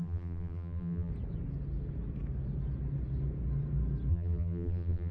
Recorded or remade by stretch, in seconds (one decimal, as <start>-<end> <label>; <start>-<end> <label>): 0.0-1.1 remade; 1.1-4.1 recorded; 4.1-5.1 remade